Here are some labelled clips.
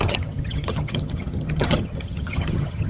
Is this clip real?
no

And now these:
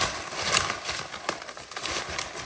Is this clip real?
yes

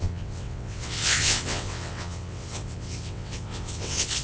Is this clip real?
no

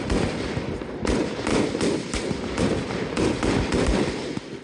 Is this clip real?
no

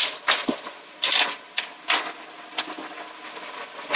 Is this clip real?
yes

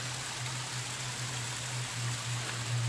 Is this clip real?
yes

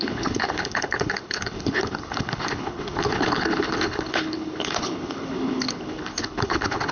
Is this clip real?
no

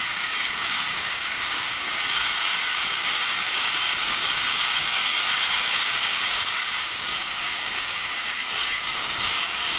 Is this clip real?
no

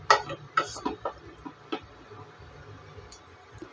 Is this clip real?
yes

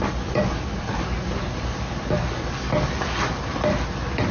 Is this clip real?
yes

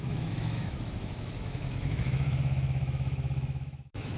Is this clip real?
no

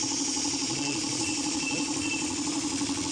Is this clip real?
no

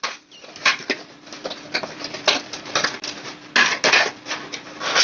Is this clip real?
yes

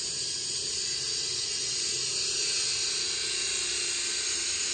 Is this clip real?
yes